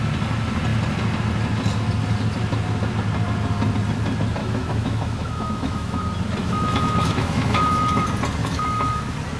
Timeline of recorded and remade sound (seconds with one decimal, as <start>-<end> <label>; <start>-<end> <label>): 0.0-4.4 recorded; 4.4-6.0 remade; 6.0-6.4 recorded; 6.4-8.0 remade; 8.0-8.4 recorded; 8.4-9.0 remade; 9.0-9.4 recorded